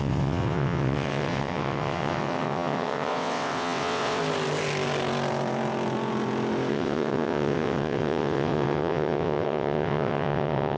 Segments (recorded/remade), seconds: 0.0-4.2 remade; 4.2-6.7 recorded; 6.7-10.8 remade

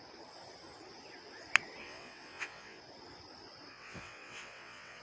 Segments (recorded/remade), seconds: 0.0-1.8 recorded; 1.8-2.8 remade; 2.8-3.7 recorded; 3.7-5.0 remade

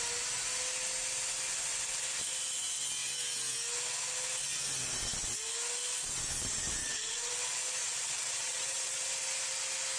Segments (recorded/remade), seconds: 0.0-6.8 recorded; 6.8-7.3 remade; 7.3-7.8 recorded; 7.8-9.1 remade; 9.1-10.0 recorded

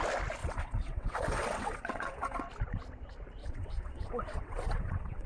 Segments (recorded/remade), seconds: 0.0-0.4 recorded; 0.4-2.4 remade; 2.4-3.4 recorded; 3.4-5.3 remade

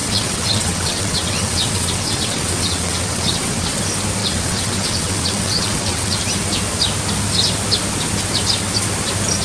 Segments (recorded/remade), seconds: 0.0-3.8 remade; 3.8-4.2 recorded; 4.2-6.2 remade; 6.2-9.4 recorded

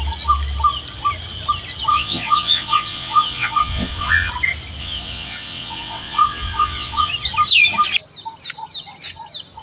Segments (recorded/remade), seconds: 0.0-1.9 recorded; 1.9-4.3 remade; 4.3-4.8 recorded; 4.8-7.1 remade; 7.1-9.6 recorded

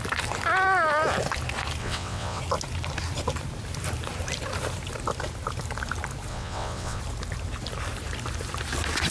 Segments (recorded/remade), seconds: 0.0-1.8 recorded; 1.8-2.4 remade; 2.4-6.3 recorded; 6.3-7.0 remade; 7.0-9.1 recorded

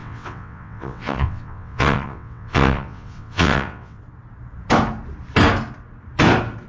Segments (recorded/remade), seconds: 0.0-4.0 remade; 4.0-6.7 recorded